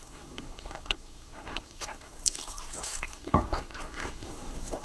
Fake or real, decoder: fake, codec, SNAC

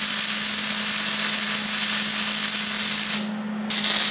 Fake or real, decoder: real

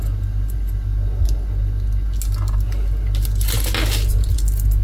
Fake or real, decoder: real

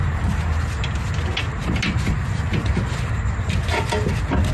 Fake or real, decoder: real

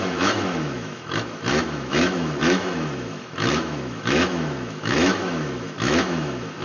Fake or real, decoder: fake, autoencoder, DAC-VAE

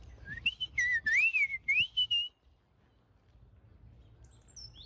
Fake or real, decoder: real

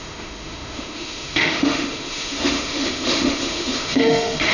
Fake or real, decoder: fake, autoencoder, DAC-VAE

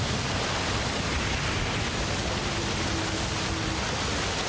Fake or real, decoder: real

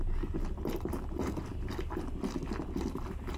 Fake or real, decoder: real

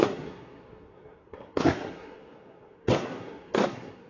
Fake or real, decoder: fake, codec, SNAC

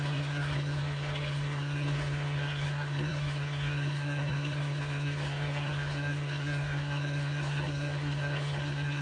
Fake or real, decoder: fake, codec, SNAC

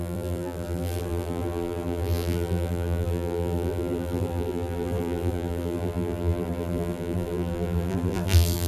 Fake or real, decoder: fake, vocoder, BigVGAN v2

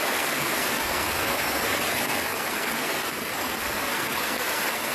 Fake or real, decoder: fake, codec, SNAC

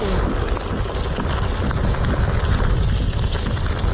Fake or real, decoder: real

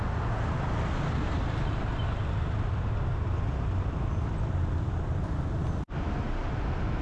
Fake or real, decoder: real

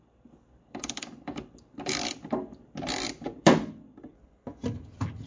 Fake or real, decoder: fake, vocoder, BigVGAN v2